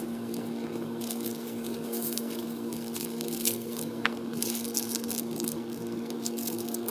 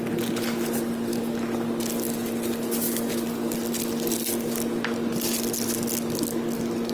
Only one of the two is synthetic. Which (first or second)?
first